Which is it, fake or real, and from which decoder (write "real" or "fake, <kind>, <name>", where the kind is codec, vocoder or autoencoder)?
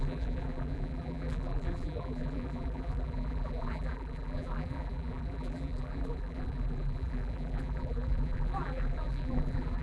fake, vocoder, BigVGAN v2